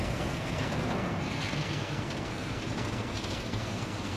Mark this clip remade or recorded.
remade